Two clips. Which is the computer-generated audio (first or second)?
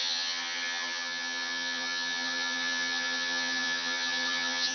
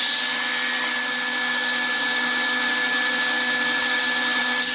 first